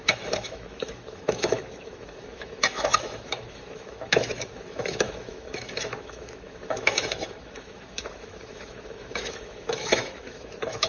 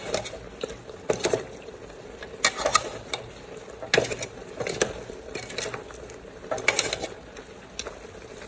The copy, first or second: first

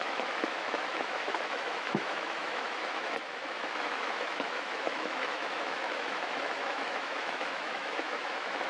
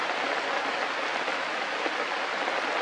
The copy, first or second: first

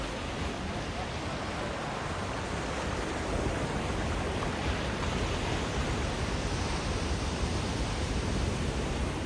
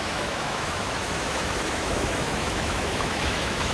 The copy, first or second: second